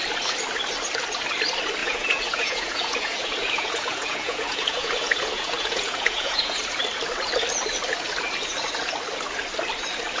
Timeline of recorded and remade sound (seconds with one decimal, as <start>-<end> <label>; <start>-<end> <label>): 0.0-1.8 recorded; 1.8-6.6 remade; 6.6-10.2 recorded